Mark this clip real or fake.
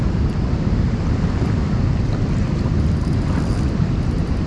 real